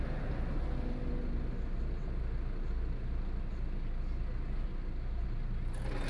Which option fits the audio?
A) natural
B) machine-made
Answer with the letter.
A